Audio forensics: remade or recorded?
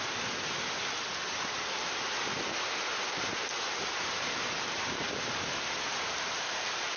recorded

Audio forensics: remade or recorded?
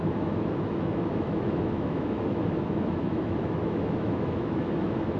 remade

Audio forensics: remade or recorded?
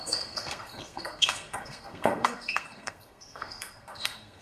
remade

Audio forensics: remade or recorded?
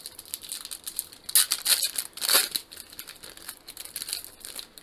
recorded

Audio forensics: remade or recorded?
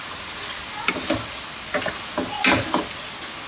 recorded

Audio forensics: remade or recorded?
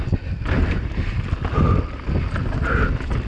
recorded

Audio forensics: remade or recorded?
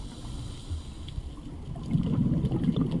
recorded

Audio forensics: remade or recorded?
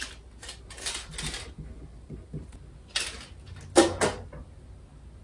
recorded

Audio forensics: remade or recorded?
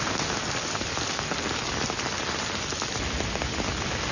recorded